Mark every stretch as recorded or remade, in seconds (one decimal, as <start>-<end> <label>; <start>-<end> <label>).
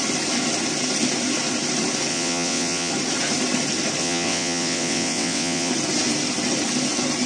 0.0-2.1 recorded; 2.1-2.9 remade; 2.9-4.0 recorded; 4.0-5.7 remade; 5.7-7.3 recorded